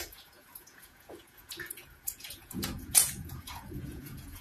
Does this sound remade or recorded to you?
remade